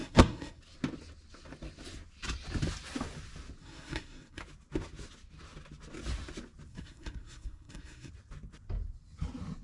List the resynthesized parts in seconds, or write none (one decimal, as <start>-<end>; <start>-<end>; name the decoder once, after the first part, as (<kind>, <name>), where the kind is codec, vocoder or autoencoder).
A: 0.0-0.6 (codec, SNAC); 3.6-4.4; 6.7-8.1